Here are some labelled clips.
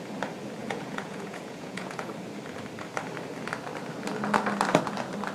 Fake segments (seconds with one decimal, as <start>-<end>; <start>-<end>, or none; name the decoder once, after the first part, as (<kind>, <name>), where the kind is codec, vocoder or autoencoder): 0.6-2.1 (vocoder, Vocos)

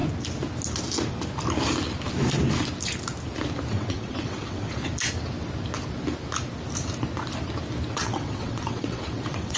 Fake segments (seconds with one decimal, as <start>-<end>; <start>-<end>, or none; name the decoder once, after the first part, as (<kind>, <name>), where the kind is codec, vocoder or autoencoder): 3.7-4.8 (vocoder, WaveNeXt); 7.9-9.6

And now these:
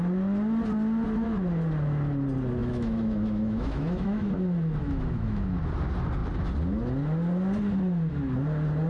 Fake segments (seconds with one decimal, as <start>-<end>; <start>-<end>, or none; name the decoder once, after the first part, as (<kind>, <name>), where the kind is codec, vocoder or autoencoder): 2.6-4.3 (autoencoder, DAC-VAE); 4.8-5.6

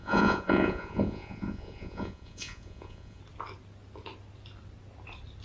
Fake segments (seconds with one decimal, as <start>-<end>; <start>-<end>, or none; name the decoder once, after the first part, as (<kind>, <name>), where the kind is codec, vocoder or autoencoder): 0.0-3.2 (vocoder, Vocos)